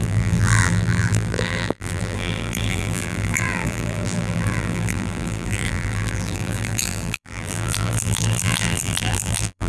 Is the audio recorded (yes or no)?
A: no